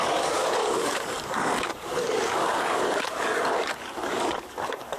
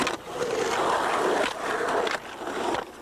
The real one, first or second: second